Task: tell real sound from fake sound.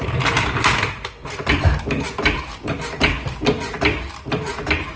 real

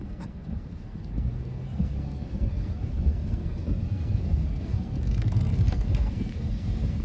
fake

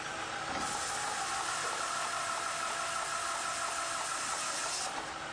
real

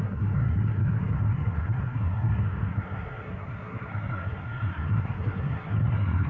fake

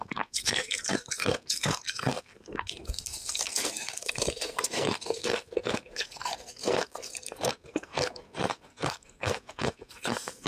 fake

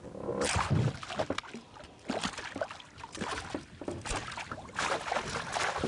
real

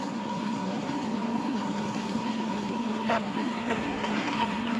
fake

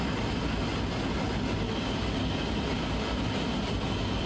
real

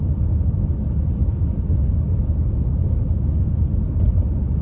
real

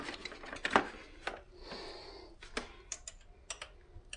real